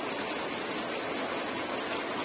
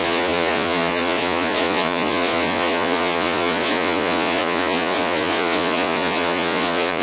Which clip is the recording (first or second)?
first